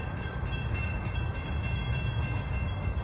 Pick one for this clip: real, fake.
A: fake